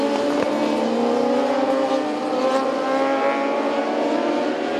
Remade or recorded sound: recorded